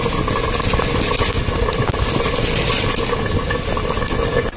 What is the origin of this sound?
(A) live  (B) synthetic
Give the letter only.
A